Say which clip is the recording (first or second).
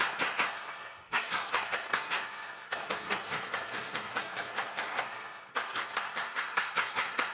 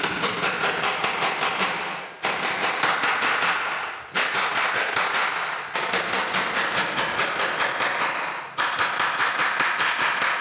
second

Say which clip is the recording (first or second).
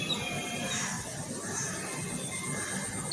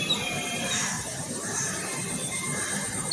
first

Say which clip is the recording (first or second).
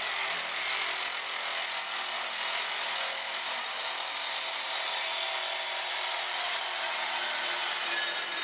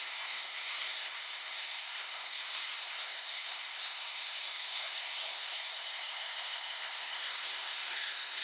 first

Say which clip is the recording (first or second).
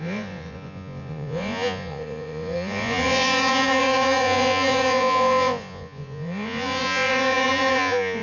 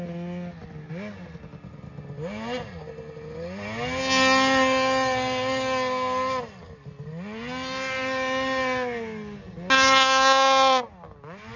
second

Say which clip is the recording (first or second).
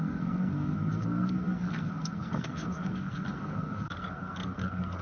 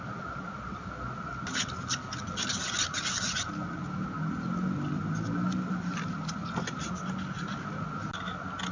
second